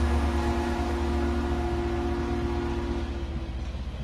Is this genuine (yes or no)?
yes